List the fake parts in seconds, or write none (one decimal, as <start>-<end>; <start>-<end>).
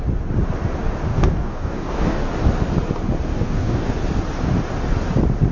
1.1-2.3; 3.3-3.9